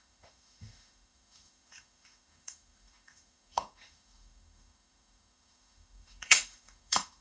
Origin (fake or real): fake